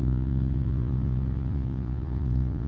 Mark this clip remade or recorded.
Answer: remade